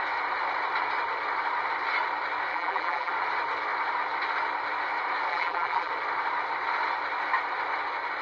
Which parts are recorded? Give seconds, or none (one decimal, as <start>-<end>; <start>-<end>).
0.0-2.5; 3.1-5.3; 5.9-8.2